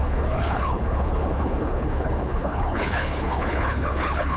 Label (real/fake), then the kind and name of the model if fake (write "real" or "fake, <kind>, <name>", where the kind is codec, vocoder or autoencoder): fake, codec, HILCodec